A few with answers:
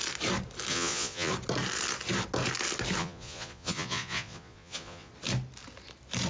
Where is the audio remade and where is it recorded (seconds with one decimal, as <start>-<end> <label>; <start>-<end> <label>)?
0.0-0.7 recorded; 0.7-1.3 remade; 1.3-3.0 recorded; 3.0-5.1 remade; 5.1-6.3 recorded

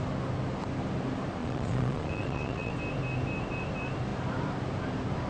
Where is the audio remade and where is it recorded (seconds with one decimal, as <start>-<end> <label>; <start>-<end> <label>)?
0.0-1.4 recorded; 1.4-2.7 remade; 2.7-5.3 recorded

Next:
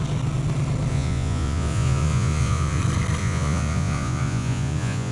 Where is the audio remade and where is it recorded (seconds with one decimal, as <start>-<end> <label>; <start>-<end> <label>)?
0.0-0.9 recorded; 0.9-2.8 remade; 2.8-3.2 recorded; 3.2-5.1 remade

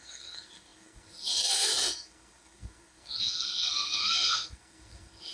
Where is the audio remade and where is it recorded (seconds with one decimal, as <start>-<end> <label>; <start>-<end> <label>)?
0.0-5.3 remade